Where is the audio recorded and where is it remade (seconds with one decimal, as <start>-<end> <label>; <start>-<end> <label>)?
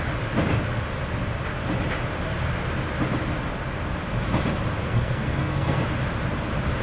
0.0-4.8 recorded; 4.8-5.8 remade; 5.8-6.8 recorded